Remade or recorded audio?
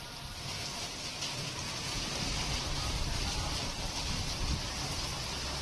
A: remade